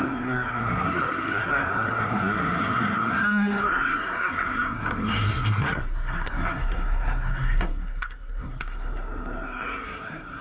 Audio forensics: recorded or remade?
remade